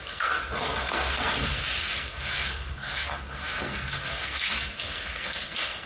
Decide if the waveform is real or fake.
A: fake